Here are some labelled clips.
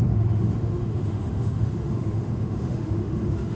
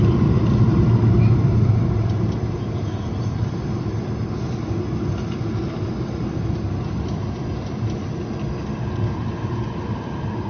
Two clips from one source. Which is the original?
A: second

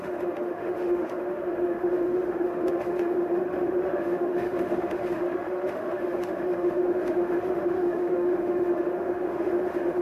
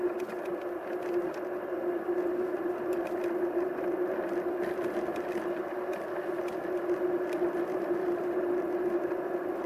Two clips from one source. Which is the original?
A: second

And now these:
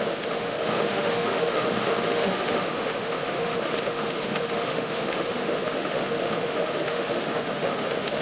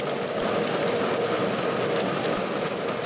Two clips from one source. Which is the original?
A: second